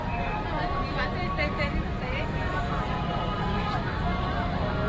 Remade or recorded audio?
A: recorded